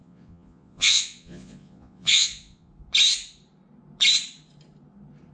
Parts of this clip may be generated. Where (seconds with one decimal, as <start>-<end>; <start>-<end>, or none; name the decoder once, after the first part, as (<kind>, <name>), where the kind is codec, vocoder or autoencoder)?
0.0-2.7 (vocoder, Vocos)